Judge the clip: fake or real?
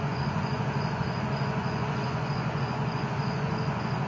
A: fake